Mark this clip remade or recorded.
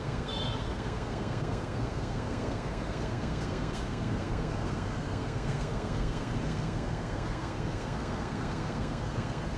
remade